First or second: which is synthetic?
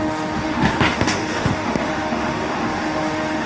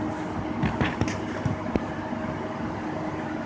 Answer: first